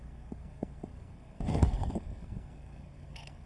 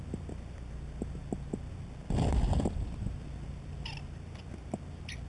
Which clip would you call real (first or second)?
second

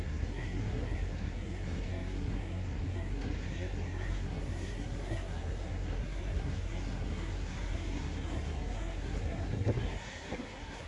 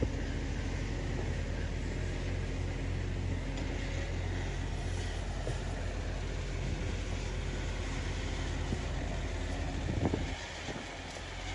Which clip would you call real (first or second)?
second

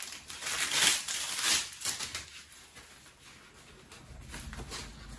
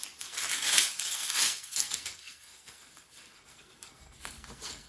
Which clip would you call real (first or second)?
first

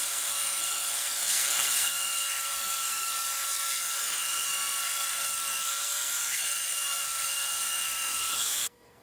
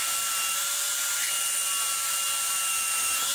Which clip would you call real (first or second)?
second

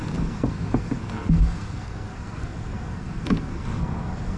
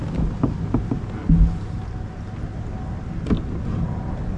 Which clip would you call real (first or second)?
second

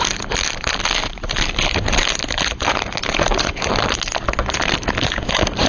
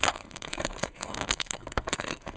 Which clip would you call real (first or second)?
first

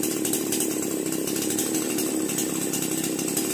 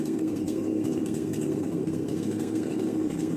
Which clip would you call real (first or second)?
first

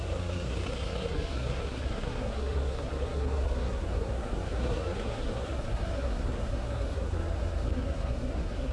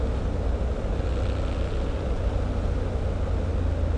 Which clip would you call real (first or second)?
second